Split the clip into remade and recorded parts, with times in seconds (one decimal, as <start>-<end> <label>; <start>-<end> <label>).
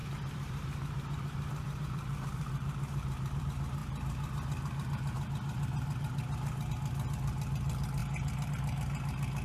0.0-3.4 remade; 3.4-9.4 recorded